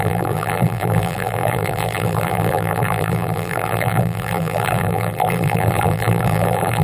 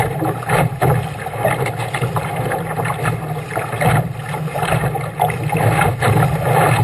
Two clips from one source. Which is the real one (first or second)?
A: second